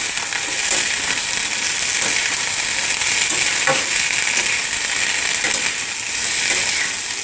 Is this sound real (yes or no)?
yes